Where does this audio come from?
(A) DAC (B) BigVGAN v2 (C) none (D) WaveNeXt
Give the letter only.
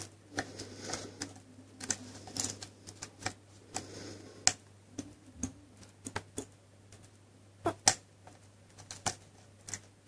C